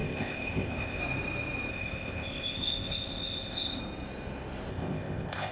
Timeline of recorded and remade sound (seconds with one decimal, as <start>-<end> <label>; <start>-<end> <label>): 0.0-1.0 remade; 1.0-1.7 recorded; 1.7-3.8 remade; 3.8-4.7 recorded; 4.7-5.5 remade